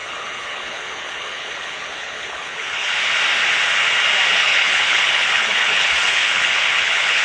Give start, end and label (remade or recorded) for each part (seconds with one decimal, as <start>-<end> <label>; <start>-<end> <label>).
0.0-2.9 remade; 2.9-4.3 recorded; 4.3-7.2 remade